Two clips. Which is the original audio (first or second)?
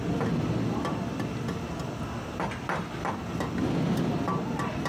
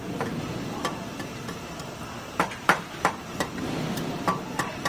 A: first